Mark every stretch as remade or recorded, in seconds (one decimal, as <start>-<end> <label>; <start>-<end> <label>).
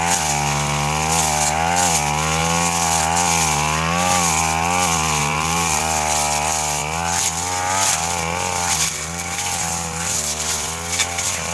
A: 0.0-5.2 recorded; 5.2-5.8 remade; 5.8-11.5 recorded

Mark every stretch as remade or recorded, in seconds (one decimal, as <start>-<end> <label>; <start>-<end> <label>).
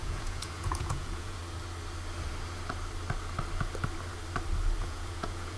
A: 0.0-1.4 remade; 1.4-4.8 recorded; 4.8-5.6 remade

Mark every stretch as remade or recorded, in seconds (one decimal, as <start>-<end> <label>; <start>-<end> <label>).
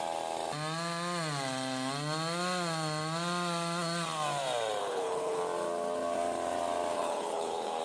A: 0.0-4.8 recorded; 4.8-5.4 remade; 5.4-6.9 recorded; 6.9-7.8 remade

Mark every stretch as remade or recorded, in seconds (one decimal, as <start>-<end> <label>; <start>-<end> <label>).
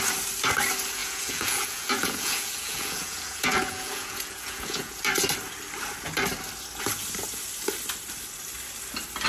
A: 0.0-1.0 recorded; 1.0-5.0 remade; 5.0-9.3 recorded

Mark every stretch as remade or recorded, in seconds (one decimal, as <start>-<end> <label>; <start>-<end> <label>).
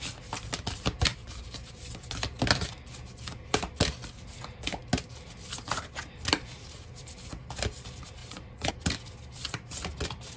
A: 0.0-1.1 recorded; 1.1-1.7 remade; 1.7-8.2 recorded; 8.2-8.7 remade; 8.7-10.4 recorded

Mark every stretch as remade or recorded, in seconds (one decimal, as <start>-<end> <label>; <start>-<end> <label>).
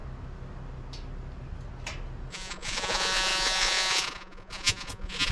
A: 0.0-2.3 recorded; 2.3-5.3 remade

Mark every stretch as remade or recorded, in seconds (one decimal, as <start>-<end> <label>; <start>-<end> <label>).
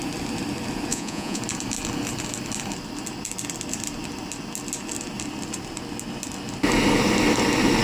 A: 0.0-0.9 recorded; 0.9-1.4 remade; 1.4-7.8 recorded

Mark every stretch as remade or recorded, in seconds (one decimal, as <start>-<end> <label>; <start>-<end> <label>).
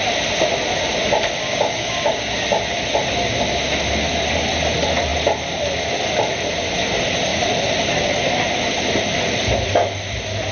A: 0.0-1.4 recorded; 1.4-2.3 remade; 2.3-10.5 recorded